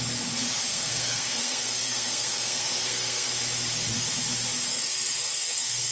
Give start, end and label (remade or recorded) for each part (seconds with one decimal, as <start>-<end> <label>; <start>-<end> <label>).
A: 0.0-0.7 recorded; 0.7-3.3 remade; 3.3-4.7 recorded; 4.7-5.9 remade